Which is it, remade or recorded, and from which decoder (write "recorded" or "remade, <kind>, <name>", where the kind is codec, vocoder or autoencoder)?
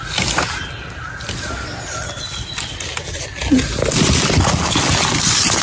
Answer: recorded